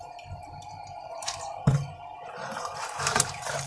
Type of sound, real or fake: fake